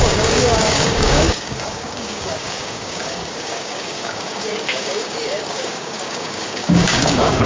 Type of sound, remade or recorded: remade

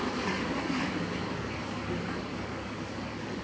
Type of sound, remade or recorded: remade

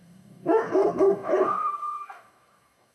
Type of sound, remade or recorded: remade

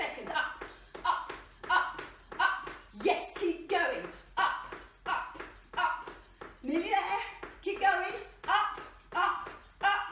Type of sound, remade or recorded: recorded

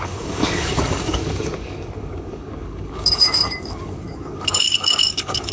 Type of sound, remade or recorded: remade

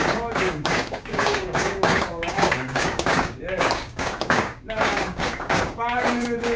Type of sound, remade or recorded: remade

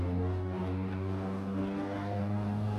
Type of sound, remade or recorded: remade